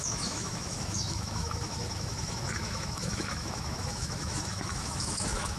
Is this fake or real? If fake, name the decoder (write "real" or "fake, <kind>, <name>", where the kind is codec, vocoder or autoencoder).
fake, autoencoder, DAC-VAE